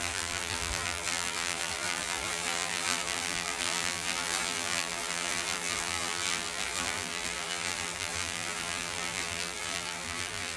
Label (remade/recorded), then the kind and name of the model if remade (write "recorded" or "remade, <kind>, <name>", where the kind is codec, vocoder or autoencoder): remade, vocoder, BigVGAN v2